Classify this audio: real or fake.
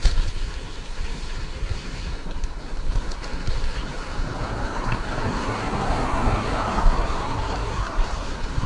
fake